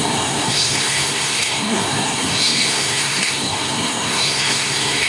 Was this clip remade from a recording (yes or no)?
yes